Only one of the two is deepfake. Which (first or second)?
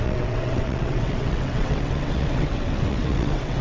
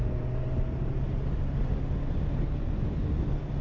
first